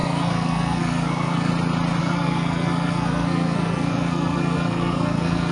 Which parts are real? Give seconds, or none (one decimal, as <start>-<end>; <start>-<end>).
1.5-2.0